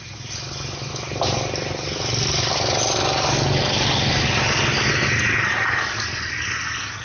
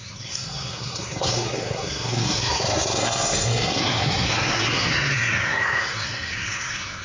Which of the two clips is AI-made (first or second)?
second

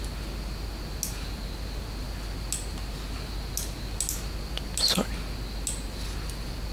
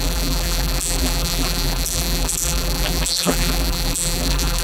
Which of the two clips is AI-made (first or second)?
second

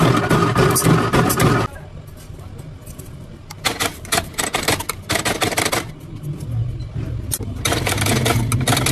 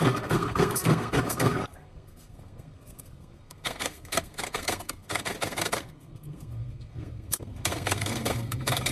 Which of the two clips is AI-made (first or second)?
second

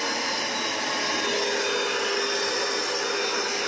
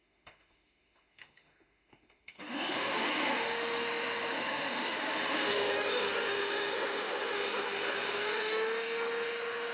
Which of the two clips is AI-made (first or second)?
second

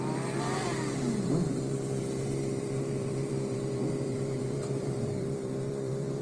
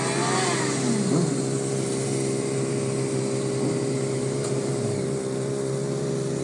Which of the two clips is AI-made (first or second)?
first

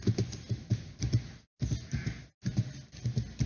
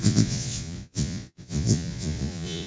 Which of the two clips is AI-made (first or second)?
second